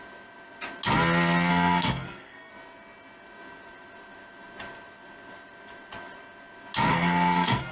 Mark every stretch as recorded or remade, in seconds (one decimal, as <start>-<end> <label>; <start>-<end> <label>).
0.0-1.5 recorded; 1.5-2.5 remade; 2.5-6.9 recorded; 6.9-7.7 remade